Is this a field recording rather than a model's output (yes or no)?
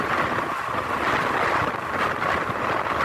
yes